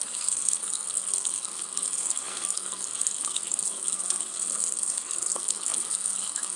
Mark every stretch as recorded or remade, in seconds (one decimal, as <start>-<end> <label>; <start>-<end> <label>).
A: 0.0-6.6 remade